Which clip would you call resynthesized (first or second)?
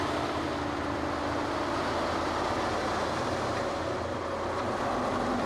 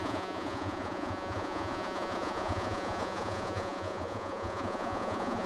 second